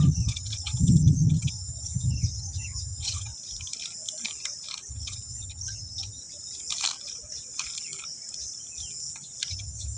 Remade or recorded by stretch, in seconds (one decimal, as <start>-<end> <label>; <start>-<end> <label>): 0.0-3.3 remade; 3.3-4.9 recorded; 4.9-6.2 remade; 6.2-9.5 recorded; 9.5-10.0 remade